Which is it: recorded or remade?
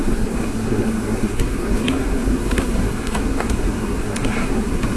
remade